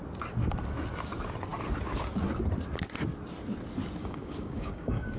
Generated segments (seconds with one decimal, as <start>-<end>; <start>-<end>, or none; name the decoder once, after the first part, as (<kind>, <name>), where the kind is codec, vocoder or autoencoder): 4.0-5.2 (codec, DAC)